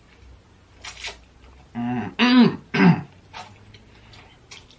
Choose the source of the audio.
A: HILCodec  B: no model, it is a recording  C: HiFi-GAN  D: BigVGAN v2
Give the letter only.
B